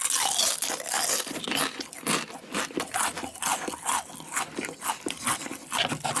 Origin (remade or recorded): recorded